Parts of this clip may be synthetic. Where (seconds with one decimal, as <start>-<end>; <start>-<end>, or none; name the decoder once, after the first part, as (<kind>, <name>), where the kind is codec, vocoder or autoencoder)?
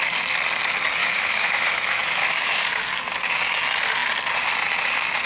1.0-2.7 (autoencoder, DAC-VAE)